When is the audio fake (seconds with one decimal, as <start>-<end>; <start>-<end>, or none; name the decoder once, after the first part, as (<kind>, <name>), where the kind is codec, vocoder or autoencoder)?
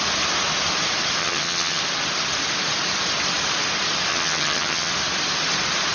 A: 1.2-1.8 (vocoder, HiFi-GAN); 4.1-4.9